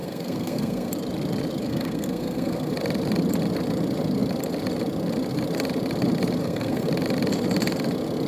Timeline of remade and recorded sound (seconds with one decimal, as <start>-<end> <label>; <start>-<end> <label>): 0.0-0.9 remade; 0.9-1.6 recorded; 1.6-2.7 remade; 2.7-6.4 recorded; 6.4-6.9 remade; 6.9-8.3 recorded